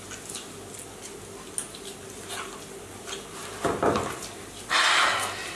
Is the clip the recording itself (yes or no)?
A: yes